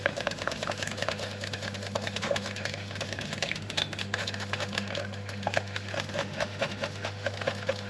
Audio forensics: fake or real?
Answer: fake